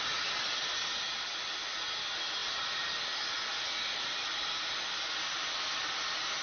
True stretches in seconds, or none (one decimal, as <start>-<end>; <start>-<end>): 0.0-6.4